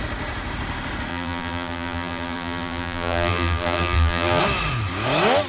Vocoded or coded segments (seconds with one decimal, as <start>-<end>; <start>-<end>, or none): 1.1-4.4